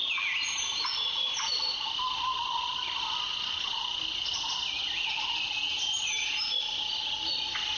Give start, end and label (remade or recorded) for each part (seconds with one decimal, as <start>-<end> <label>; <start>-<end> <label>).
0.0-7.8 recorded